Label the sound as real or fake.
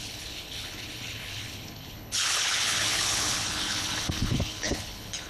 fake